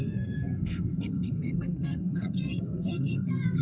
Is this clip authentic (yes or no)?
no